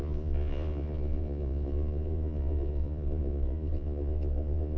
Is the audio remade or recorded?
remade